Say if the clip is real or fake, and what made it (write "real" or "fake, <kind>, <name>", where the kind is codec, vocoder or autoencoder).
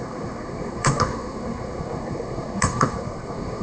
fake, codec, SNAC